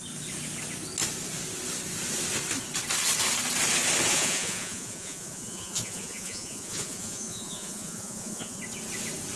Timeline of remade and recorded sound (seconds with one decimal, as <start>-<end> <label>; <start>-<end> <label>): 0.0-4.1 recorded; 4.1-8.6 remade; 8.6-9.4 recorded